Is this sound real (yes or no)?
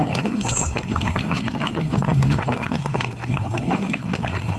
no